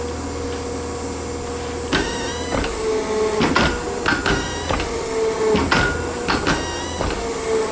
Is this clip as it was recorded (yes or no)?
yes